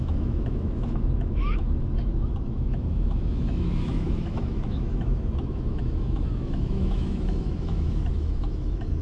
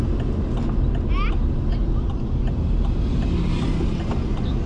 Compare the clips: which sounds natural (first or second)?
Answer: second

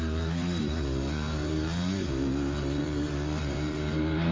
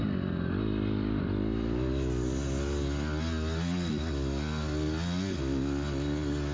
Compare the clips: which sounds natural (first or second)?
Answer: second